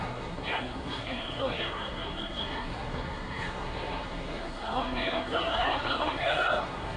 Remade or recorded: remade